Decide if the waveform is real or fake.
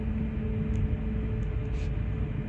real